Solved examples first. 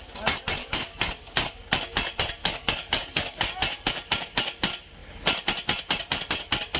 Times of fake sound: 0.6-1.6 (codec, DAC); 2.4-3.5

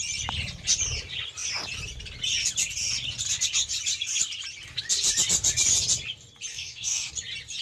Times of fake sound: 6.5-7.1 (codec, DAC)

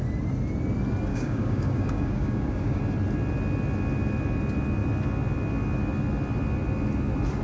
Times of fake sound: 1.1-2.8 (codec, DAC)

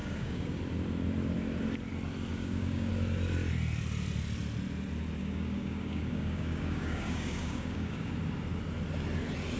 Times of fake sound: 0.0-0.6 (codec, DAC); 2.3-2.9; 5.2-8.1

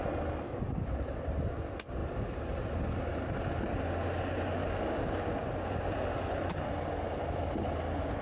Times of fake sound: 4.6-5.2 (codec, DAC)

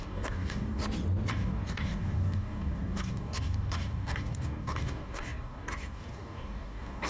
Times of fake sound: 0.0-0.8 (codec, DAC); 1.3-7.1

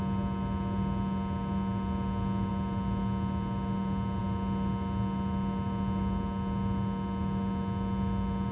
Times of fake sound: none

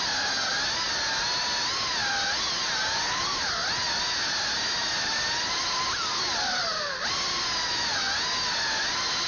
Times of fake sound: none